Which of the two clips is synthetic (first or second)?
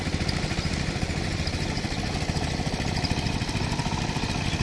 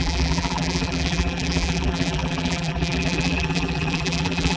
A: second